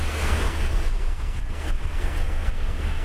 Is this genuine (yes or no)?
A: no